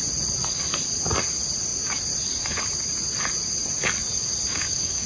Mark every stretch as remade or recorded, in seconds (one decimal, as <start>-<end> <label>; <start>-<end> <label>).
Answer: 0.0-4.5 recorded; 4.5-5.1 remade